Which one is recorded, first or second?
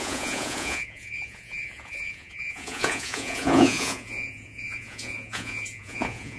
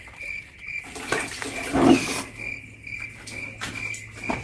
second